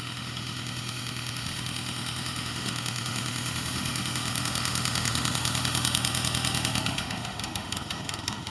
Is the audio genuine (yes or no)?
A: no